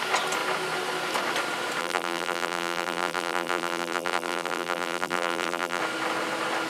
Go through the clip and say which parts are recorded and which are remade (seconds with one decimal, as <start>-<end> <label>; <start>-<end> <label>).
0.0-1.8 recorded; 1.8-5.8 remade; 5.8-6.7 recorded